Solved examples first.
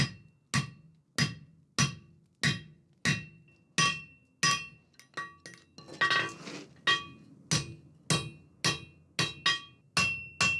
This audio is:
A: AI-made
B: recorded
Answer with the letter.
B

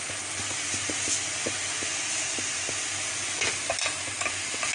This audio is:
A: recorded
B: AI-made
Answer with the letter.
A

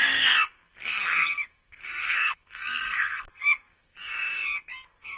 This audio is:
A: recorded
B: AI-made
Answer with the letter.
B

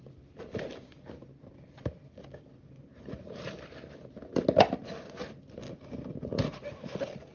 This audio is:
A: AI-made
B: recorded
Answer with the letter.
B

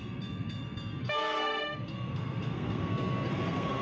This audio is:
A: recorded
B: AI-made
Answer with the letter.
B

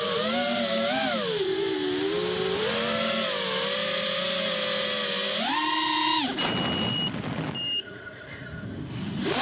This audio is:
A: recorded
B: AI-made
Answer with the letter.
A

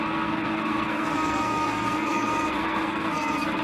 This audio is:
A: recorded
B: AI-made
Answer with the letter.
B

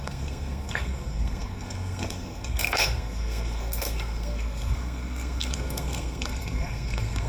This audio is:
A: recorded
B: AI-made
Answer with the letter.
B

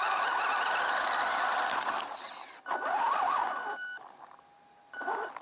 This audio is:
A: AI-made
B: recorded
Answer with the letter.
B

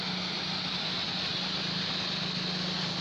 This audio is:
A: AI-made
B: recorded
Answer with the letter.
B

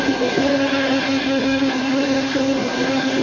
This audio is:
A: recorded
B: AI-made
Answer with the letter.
B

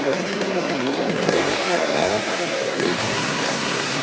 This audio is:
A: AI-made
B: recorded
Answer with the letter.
A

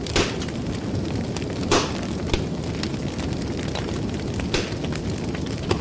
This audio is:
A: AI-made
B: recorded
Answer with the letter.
B